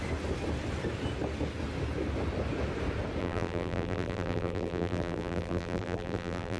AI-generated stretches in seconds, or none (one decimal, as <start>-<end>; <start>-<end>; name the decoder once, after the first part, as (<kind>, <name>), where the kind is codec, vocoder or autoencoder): 3.2-6.6 (vocoder, BigVGAN v2)